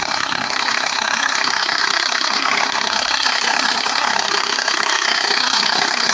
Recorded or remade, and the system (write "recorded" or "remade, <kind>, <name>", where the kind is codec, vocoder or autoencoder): remade, codec, SNAC